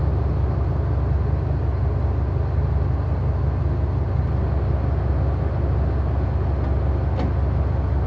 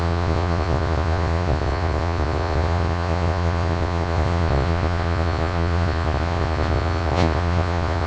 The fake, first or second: second